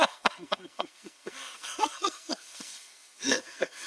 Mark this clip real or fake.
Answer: fake